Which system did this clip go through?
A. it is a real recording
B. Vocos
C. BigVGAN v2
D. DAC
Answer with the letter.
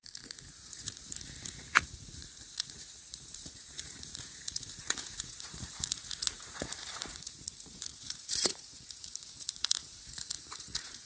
B